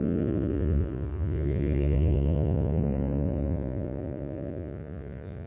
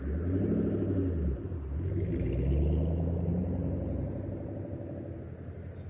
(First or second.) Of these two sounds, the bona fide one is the second